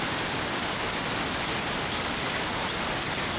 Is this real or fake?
real